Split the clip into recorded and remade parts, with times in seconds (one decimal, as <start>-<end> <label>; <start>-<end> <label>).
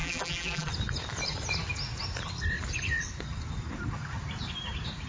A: 0.0-0.7 remade; 0.7-5.1 recorded